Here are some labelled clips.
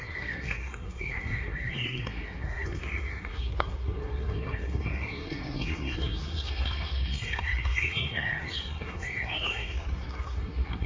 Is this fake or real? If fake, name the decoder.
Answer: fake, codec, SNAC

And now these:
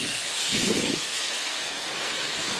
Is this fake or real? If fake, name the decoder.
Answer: fake, codec, SNAC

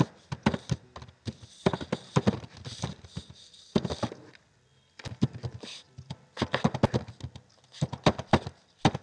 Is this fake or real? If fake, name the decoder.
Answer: real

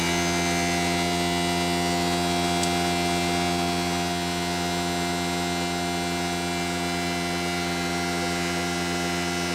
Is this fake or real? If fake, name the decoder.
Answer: real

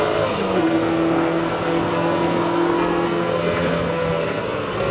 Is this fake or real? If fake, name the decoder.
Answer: fake, codec, SNAC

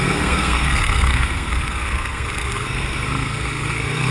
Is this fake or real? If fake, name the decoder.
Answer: fake, codec, SNAC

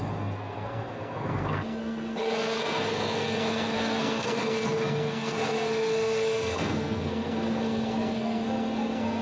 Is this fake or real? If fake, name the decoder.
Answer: fake, codec, SNAC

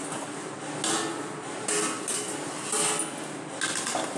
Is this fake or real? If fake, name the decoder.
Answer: real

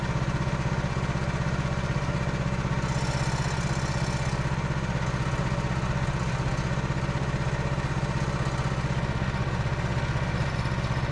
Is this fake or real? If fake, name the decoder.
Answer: real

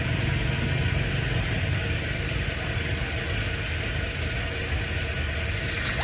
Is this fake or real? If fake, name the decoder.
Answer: real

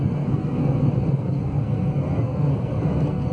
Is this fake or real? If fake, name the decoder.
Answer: fake, codec, SNAC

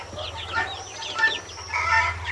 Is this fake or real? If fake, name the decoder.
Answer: real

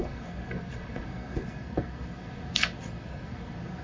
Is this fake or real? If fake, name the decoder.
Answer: fake, codec, SNAC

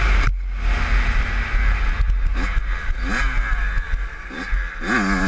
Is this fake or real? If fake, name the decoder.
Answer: real